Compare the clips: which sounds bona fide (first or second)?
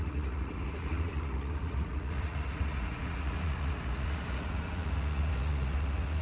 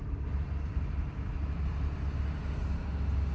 second